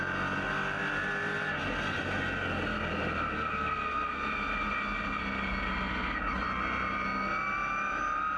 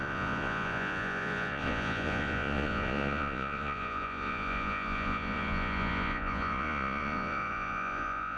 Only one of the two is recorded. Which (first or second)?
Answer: first